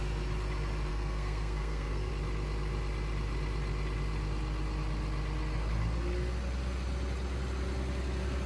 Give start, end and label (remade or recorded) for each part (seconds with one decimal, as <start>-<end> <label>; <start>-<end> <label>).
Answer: 0.0-0.9 recorded; 0.9-2.1 remade; 2.1-8.5 recorded